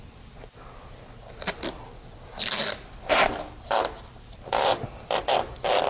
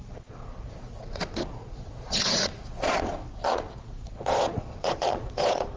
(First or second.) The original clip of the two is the first